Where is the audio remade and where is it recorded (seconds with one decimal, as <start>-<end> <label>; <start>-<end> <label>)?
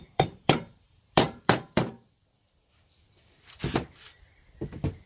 0.0-1.9 remade; 1.9-5.1 recorded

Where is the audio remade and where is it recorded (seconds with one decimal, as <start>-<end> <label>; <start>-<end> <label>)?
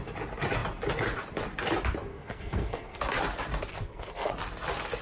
0.0-2.1 recorded; 2.1-3.0 remade; 3.0-3.7 recorded; 3.7-4.3 remade; 4.3-5.0 recorded